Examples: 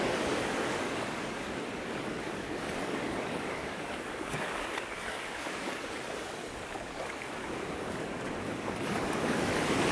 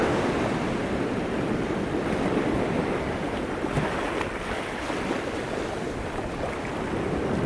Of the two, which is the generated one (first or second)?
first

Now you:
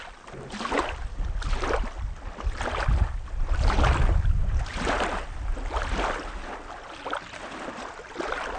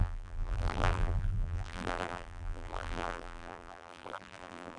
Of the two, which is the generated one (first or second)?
second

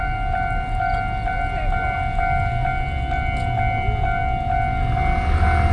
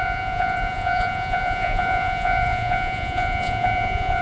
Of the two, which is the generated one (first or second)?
second